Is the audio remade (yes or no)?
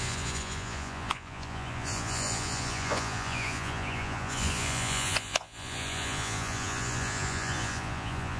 yes